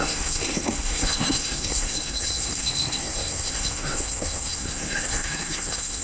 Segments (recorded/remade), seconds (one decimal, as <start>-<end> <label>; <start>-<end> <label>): 0.0-6.0 remade